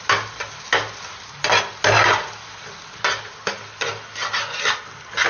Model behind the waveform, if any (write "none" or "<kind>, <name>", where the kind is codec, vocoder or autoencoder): none